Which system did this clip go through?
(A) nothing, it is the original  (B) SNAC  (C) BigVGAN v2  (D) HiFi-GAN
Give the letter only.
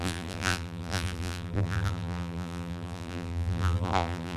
C